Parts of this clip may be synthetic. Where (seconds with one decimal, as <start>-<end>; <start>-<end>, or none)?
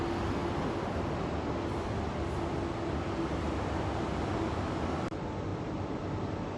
5.5-6.0